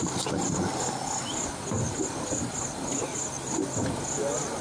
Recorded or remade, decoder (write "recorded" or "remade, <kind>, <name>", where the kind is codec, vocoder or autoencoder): recorded